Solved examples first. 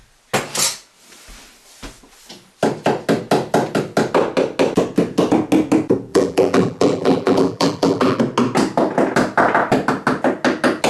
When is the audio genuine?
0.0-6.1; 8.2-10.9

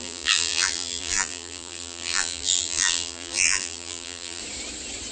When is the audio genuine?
4.4-5.1